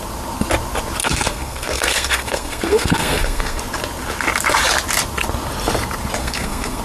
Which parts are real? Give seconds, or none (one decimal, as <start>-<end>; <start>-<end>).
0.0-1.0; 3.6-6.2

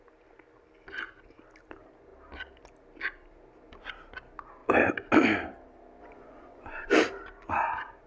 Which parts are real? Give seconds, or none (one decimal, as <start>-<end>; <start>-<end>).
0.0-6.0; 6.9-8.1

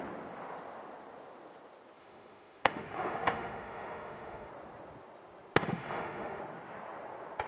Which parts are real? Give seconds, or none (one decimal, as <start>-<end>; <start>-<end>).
0.0-2.0; 4.5-5.6; 6.4-7.5

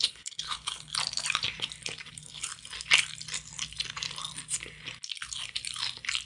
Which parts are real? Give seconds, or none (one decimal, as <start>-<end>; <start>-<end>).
0.9-2.1; 2.5-6.3

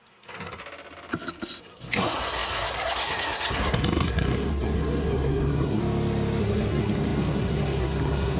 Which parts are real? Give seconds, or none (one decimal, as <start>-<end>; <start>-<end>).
0.6-1.6; 5.8-6.4

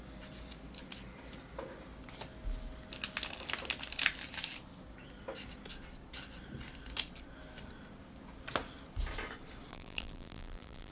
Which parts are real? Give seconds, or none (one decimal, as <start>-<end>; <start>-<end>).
0.0-9.7

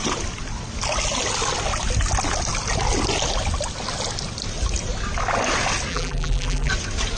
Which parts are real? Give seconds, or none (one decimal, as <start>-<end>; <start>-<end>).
0.0-5.9; 6.7-7.2